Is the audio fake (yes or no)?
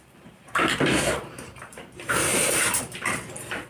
yes